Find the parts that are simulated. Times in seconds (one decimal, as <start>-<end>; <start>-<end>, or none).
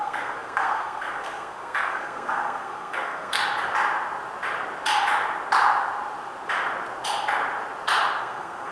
0.0-3.4; 8.2-8.7